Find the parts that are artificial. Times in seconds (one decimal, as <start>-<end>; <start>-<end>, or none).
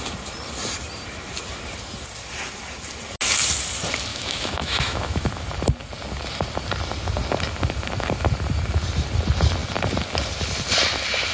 4.1-5.3